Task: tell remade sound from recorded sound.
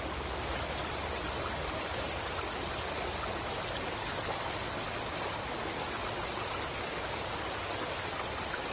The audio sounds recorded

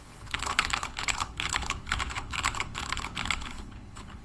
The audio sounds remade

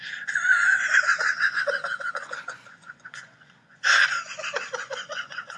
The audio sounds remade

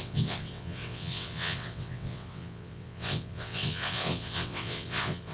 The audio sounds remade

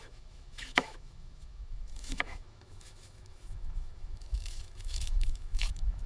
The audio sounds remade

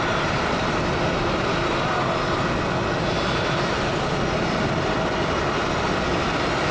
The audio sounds recorded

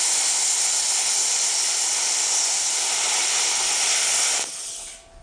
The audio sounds recorded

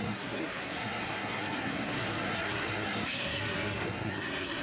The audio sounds remade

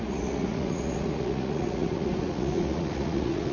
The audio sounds remade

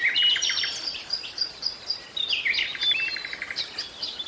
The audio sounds recorded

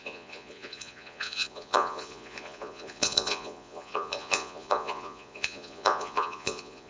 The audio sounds remade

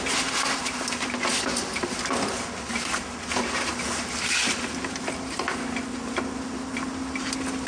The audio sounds recorded